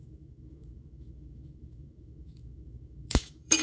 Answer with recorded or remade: remade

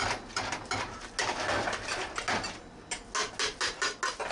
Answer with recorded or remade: recorded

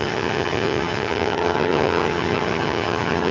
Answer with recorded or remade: remade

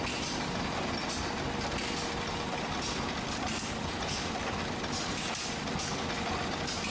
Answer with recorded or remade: recorded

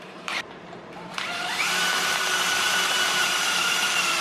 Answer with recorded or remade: remade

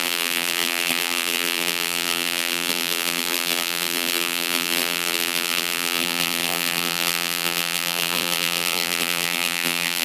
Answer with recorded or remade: remade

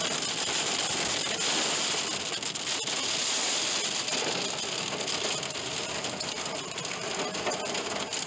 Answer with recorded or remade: recorded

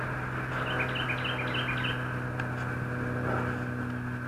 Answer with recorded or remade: recorded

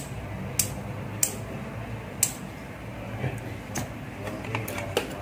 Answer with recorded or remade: recorded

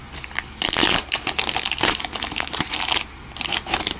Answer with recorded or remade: recorded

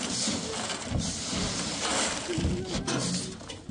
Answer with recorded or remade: recorded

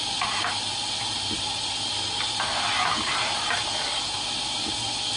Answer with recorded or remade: recorded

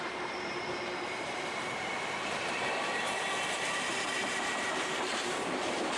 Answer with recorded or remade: remade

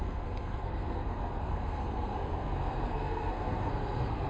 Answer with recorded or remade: remade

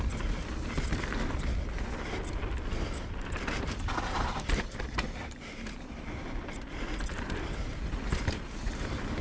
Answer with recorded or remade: remade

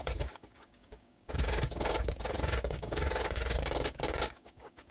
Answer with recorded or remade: remade